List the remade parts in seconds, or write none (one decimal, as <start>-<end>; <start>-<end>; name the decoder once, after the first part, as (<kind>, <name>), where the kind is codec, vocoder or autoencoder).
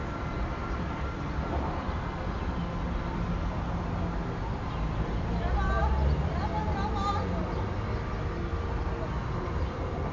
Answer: none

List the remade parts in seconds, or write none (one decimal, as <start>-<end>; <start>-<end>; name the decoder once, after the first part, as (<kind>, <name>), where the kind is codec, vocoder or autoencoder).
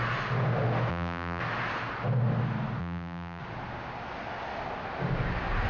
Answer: 0.9-1.4 (vocoder, BigVGAN v2); 2.8-3.4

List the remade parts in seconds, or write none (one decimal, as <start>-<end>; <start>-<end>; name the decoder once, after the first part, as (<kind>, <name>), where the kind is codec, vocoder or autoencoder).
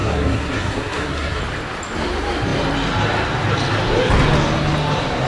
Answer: 0.0-1.4 (codec, SNAC)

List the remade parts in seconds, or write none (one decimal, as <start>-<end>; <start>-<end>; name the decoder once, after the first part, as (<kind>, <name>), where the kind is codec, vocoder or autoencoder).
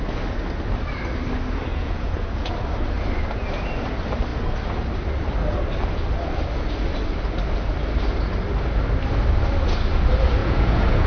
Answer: 1.7-2.5 (vocoder, Vocos); 10.4-11.1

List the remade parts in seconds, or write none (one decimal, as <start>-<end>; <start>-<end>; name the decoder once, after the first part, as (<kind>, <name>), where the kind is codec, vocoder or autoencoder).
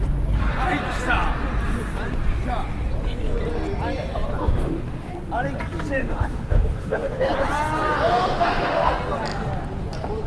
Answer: 4.4-5.1 (autoencoder, DAC-VAE); 6.0-7.3; 8.1-8.9